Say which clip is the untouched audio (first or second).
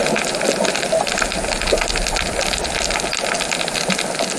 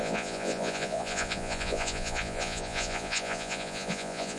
first